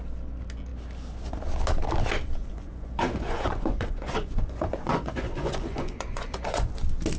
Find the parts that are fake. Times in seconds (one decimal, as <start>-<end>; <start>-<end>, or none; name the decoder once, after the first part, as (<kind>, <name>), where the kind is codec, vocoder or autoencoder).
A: 2.4-6.7 (vocoder, Vocos)